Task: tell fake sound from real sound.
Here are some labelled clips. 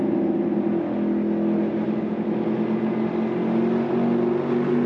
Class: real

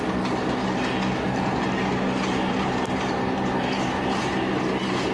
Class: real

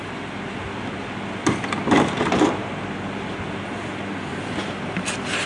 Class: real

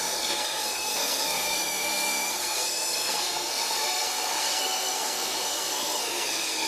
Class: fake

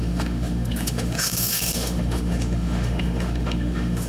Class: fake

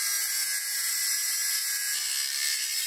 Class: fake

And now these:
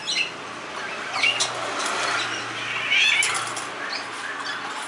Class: real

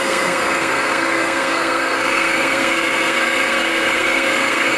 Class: fake